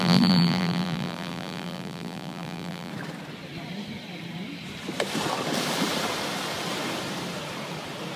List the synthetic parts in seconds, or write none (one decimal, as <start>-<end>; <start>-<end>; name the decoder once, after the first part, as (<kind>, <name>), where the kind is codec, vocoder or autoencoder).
0.0-2.9 (vocoder, BigVGAN v2)